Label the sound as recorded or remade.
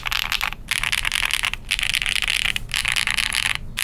recorded